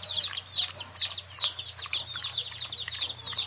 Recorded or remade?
recorded